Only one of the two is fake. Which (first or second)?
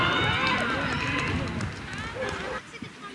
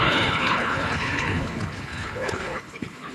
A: second